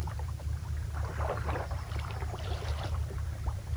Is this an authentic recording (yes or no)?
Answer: no